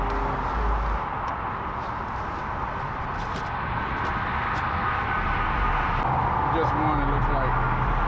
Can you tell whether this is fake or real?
real